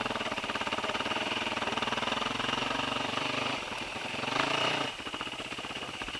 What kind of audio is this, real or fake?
fake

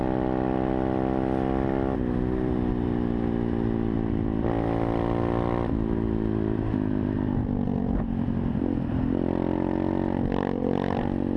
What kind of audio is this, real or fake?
fake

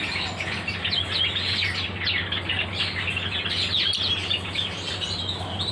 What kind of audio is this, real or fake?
real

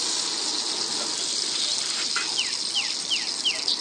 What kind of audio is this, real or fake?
real